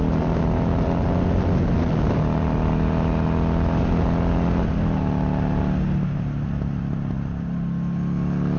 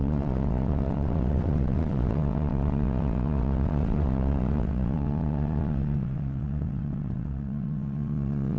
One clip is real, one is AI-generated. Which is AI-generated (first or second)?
second